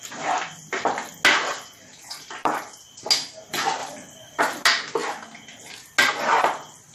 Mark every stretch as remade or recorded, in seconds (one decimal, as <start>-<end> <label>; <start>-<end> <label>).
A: 0.0-1.9 recorded; 1.9-2.6 remade; 2.6-6.9 recorded